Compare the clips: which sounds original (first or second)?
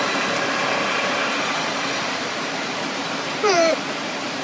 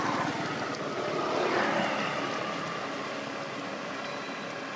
second